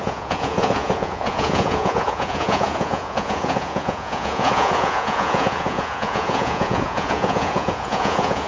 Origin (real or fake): fake